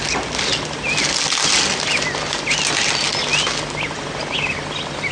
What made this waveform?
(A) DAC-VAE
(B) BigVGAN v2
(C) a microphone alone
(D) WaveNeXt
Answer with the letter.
C